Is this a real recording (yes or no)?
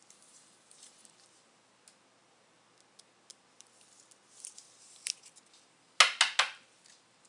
yes